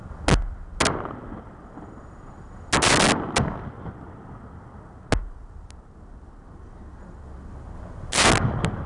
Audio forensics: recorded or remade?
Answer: recorded